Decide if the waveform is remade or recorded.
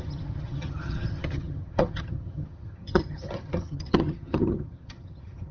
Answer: remade